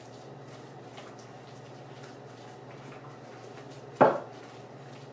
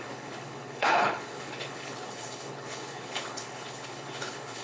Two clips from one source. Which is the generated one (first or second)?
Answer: second